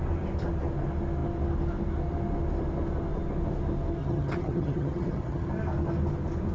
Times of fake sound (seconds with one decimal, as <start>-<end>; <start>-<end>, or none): 4.0-5.5